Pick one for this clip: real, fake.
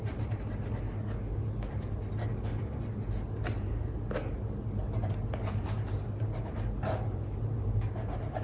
real